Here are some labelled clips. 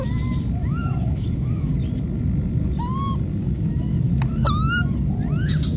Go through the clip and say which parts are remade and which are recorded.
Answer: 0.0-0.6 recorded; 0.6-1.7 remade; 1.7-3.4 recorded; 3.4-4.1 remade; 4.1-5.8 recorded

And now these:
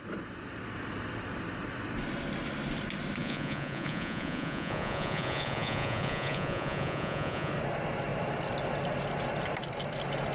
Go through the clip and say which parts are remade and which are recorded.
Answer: 0.0-3.2 recorded; 3.2-7.5 remade; 7.5-10.3 recorded

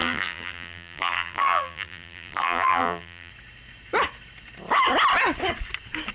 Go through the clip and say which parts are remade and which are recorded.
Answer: 0.0-3.3 remade; 3.3-6.1 recorded

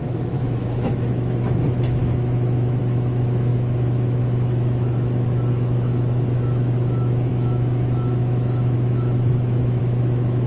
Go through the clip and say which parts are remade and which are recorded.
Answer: 0.0-10.5 remade